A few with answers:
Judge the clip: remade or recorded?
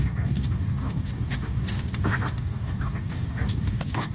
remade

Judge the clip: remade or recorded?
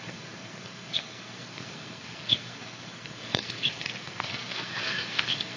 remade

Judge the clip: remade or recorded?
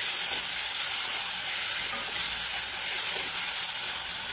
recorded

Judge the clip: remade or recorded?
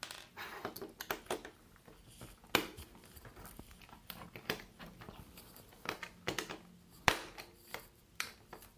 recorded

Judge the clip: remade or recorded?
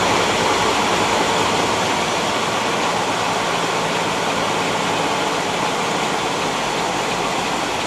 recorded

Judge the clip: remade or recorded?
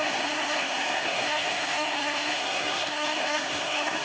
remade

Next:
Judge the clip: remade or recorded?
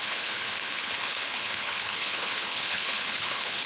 remade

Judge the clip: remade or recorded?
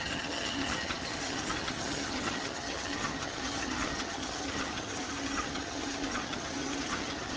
remade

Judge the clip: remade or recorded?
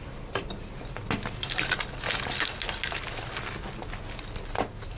recorded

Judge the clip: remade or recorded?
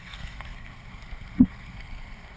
remade